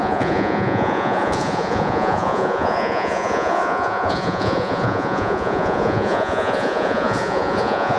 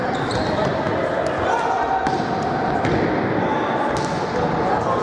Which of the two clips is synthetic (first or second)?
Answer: first